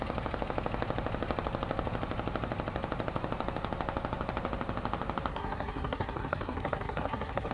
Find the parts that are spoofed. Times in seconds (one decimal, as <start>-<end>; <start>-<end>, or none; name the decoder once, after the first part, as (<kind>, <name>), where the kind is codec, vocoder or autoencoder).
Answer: 5.3-7.5 (codec, SNAC)